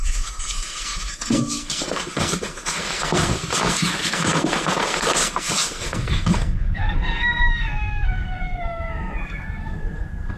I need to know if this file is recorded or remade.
remade